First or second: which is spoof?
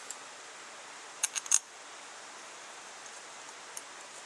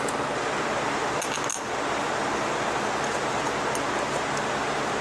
first